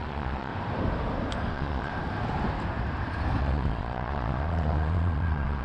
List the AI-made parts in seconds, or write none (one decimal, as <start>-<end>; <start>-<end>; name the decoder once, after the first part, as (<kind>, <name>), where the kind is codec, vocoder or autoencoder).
0.0-0.5 (vocoder, Vocos); 1.5-1.9; 3.4-5.6